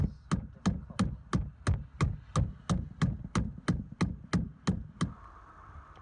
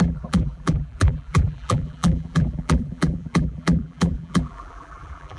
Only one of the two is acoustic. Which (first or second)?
first